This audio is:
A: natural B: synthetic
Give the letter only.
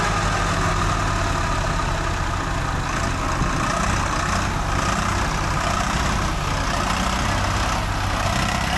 A